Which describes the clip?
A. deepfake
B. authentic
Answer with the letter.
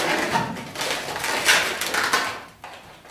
B